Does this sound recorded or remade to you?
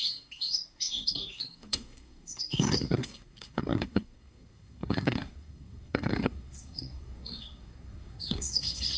remade